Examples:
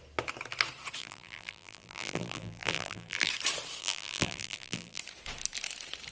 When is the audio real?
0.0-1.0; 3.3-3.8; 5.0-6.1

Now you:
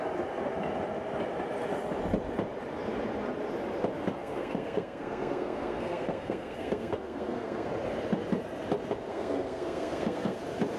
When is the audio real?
0.0-4.2; 7.7-9.1; 10.4-10.8

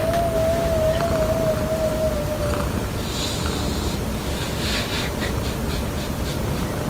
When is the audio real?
0.0-4.9; 5.5-6.9

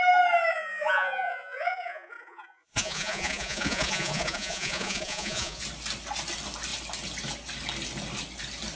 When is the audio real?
0.0-0.5; 5.6-8.8

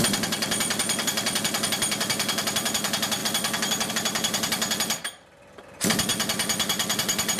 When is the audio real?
3.2-3.9; 6.1-7.4

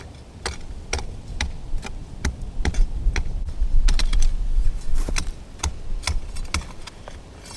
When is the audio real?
0.0-4.9; 5.6-7.6